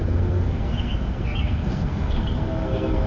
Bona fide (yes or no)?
no